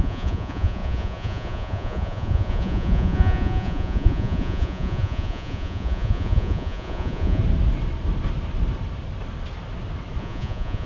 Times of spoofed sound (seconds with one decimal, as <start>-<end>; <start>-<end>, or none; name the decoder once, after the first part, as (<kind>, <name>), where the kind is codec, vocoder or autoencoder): 0.0-7.4 (vocoder, Vocos); 10.2-10.9